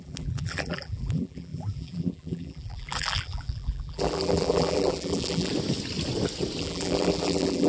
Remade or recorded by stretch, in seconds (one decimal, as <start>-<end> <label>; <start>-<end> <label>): 0.0-5.5 remade; 5.5-6.6 recorded; 6.6-7.7 remade

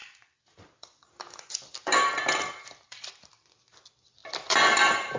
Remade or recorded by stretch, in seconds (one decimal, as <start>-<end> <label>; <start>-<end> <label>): 0.0-3.1 remade; 3.1-4.2 recorded; 4.2-5.2 remade

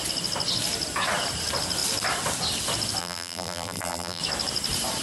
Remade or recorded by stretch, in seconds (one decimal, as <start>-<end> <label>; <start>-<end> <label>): 0.0-3.0 recorded; 3.0-4.2 remade; 4.2-5.0 recorded

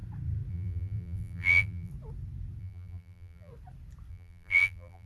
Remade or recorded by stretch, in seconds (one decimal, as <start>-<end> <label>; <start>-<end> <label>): 0.0-0.5 recorded; 0.5-1.9 remade; 1.9-2.6 recorded; 2.6-3.5 remade; 3.5-4.1 recorded; 4.1-5.1 remade

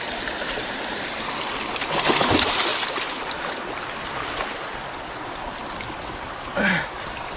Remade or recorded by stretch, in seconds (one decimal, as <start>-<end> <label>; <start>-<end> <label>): 0.0-2.7 remade; 2.7-5.0 recorded; 5.0-5.6 remade; 5.6-6.6 recorded; 6.6-7.4 remade

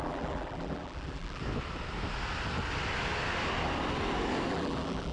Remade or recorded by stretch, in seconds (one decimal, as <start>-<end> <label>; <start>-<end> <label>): 0.0-1.4 remade; 1.4-4.5 recorded; 4.5-5.1 remade